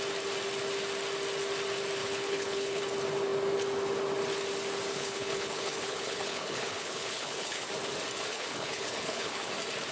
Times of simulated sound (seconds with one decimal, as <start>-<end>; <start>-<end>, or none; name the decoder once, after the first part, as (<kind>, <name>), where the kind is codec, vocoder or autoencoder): 2.0-2.8 (codec, HILCodec); 4.9-7.7; 8.3-9.5